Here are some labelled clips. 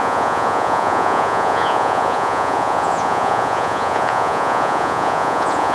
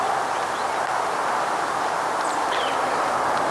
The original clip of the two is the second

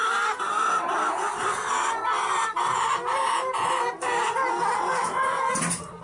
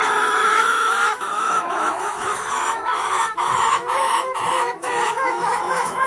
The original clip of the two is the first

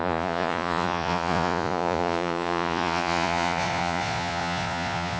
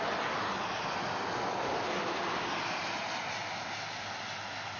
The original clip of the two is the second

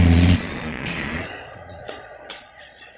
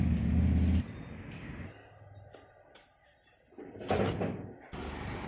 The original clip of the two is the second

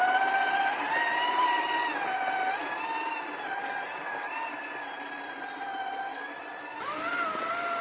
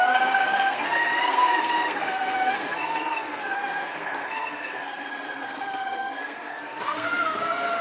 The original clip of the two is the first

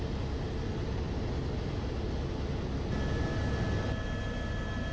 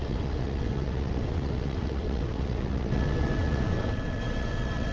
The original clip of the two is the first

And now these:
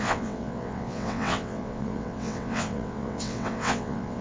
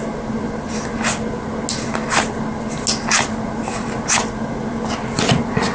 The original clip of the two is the second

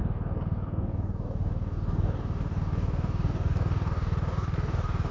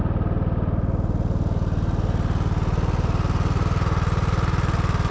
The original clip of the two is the second